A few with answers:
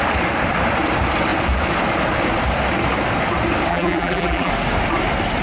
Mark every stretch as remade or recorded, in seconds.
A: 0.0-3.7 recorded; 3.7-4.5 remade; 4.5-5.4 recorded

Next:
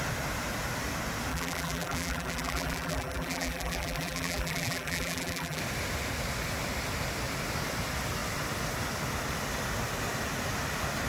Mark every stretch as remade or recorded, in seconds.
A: 0.0-1.3 recorded; 1.3-5.6 remade; 5.6-11.1 recorded

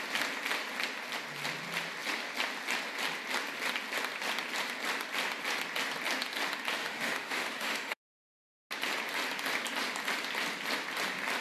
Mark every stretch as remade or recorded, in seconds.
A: 0.0-6.8 recorded; 6.8-8.3 remade; 8.3-11.4 recorded